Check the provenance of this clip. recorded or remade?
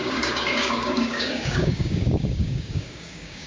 remade